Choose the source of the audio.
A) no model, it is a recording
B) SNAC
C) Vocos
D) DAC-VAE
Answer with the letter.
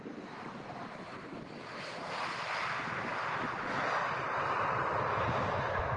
A